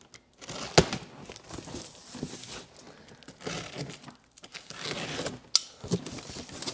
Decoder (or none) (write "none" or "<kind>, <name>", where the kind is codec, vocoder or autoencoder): none